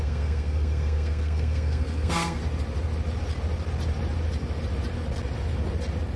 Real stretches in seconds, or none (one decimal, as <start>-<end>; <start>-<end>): 2.4-6.2